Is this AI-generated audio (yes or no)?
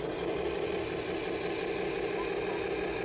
no